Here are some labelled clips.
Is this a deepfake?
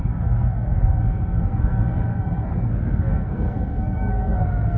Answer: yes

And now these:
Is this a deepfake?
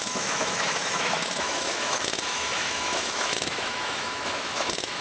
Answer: yes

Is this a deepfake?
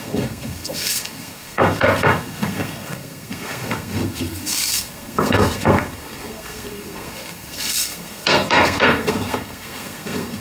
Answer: yes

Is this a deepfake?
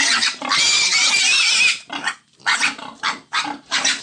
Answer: yes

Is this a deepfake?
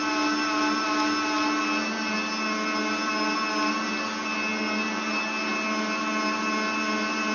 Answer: no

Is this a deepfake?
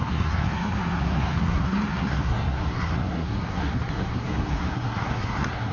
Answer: yes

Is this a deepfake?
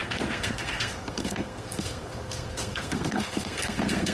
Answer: yes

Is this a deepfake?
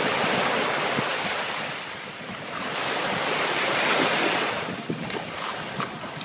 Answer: no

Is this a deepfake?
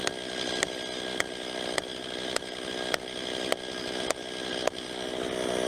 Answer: no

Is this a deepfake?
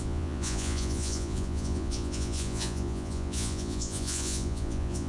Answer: yes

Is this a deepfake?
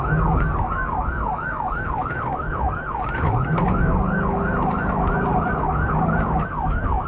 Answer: yes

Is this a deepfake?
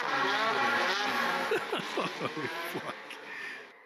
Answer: yes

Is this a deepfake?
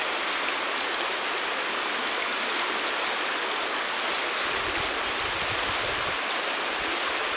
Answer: no